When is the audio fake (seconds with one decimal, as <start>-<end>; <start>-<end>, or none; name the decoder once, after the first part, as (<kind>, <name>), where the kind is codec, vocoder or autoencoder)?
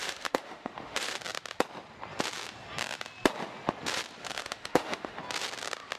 0.0-1.2 (autoencoder, DAC-VAE); 4.2-5.2